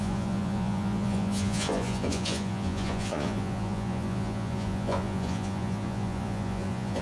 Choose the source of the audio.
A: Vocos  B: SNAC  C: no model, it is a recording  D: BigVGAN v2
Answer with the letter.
A